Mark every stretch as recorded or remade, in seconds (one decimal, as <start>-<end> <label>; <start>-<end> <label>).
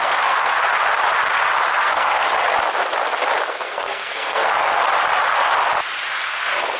0.0-0.6 remade; 0.6-1.7 recorded; 1.7-2.3 remade; 2.3-3.5 recorded; 3.5-4.6 remade; 4.6-6.1 recorded; 6.1-6.8 remade